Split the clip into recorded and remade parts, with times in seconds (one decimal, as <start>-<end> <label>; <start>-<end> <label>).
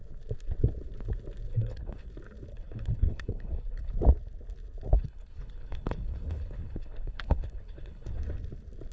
0.0-1.5 recorded; 1.5-2.1 remade; 2.1-2.5 recorded; 2.5-3.9 remade; 3.9-4.9 recorded; 4.9-8.2 remade; 8.2-8.9 recorded